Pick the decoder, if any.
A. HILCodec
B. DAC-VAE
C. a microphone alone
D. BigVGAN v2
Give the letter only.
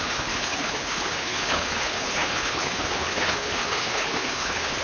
A